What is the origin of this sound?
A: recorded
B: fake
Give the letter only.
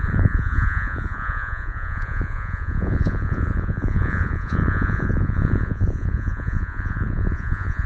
B